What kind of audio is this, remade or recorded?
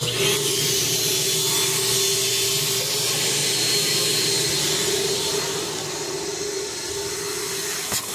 recorded